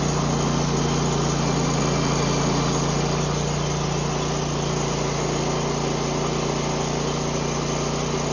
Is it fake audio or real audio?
real